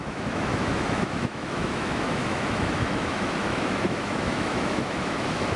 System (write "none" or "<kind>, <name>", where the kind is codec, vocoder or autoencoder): autoencoder, DAC-VAE